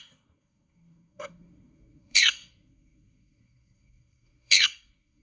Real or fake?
fake